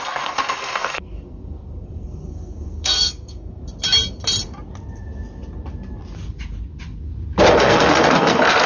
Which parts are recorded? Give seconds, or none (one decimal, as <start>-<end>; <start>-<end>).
3.6-7.5